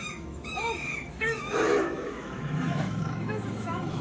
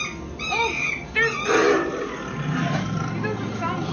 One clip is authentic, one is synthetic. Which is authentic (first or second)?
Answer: second